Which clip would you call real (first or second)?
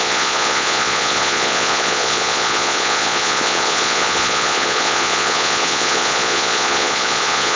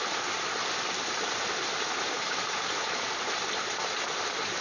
second